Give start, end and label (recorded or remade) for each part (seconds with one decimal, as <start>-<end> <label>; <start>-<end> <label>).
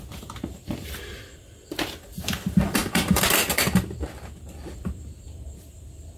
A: 0.0-6.2 remade